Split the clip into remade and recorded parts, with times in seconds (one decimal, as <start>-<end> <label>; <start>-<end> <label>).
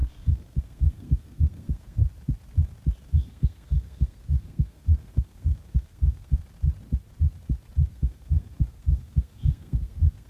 0.0-2.0 remade; 2.0-3.1 recorded; 3.1-6.4 remade; 6.4-7.9 recorded; 7.9-10.3 remade